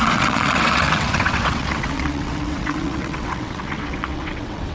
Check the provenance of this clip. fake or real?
fake